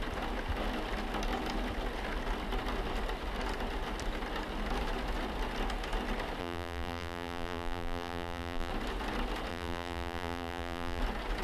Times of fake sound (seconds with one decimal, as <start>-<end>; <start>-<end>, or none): 6.4-8.7; 9.5-11.0